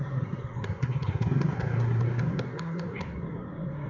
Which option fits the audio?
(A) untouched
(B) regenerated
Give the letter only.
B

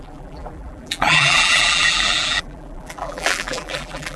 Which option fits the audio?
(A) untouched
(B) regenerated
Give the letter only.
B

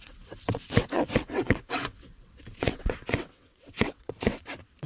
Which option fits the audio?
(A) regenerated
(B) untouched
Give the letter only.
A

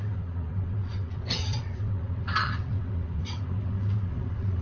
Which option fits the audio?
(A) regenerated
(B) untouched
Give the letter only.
A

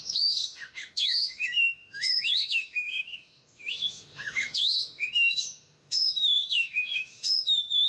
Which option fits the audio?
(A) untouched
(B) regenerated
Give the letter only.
B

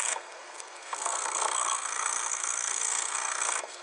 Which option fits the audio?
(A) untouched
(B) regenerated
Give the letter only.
B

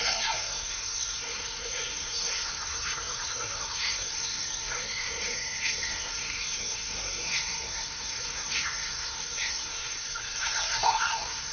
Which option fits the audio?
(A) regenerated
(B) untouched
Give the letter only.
A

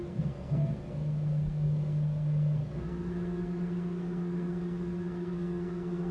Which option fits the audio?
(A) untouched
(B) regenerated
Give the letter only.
B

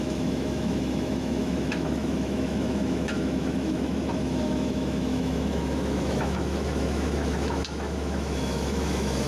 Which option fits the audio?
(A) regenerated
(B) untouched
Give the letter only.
A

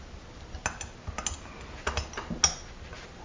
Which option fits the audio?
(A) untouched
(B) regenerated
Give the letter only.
A